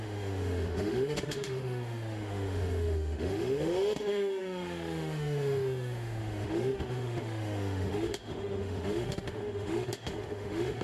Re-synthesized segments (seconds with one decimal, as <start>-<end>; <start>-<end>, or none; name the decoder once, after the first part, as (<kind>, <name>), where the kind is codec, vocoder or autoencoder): 0.0-10.8 (autoencoder, DAC-VAE)